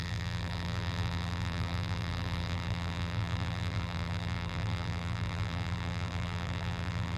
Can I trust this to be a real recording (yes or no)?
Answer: no